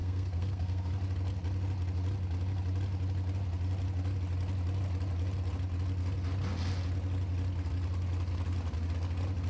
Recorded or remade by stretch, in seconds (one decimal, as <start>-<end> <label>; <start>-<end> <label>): 0.0-0.9 remade; 0.9-9.5 recorded